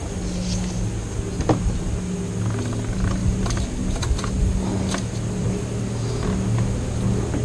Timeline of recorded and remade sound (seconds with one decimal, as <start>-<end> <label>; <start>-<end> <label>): 0.0-7.4 recorded